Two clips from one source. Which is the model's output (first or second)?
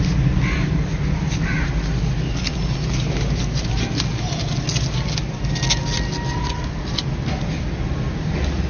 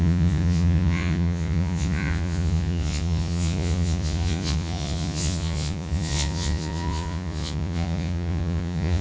second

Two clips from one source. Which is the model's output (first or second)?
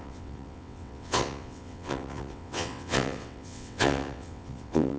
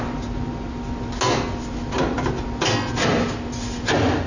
first